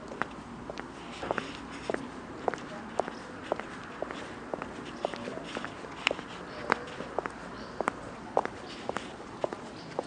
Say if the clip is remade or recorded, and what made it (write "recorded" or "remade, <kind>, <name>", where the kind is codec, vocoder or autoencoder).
recorded